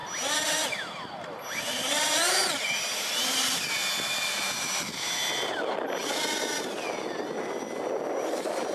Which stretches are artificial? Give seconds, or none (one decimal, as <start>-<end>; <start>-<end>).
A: none